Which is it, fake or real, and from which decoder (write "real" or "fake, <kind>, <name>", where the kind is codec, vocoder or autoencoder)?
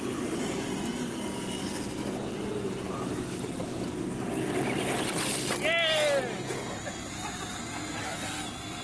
real